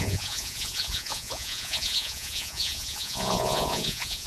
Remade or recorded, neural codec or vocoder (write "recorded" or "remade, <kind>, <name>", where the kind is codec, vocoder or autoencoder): remade, vocoder, Vocos